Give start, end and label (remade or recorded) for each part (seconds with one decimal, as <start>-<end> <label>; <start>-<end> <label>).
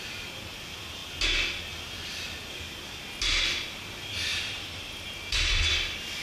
0.0-4.3 recorded; 4.3-5.7 remade; 5.7-6.2 recorded